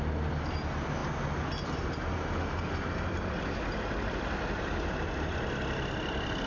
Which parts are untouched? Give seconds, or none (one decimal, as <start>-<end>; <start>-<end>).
0.0-6.5